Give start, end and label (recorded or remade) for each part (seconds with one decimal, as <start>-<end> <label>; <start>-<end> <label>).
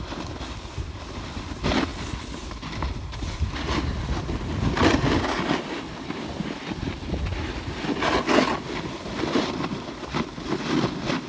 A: 0.0-11.3 recorded